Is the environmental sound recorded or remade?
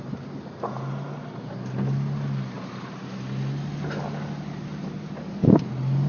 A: recorded